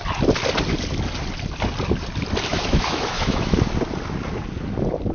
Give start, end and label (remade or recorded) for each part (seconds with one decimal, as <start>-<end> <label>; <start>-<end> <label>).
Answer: 0.0-2.5 recorded; 2.5-3.7 remade; 3.7-5.1 recorded